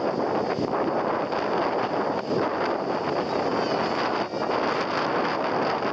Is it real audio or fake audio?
real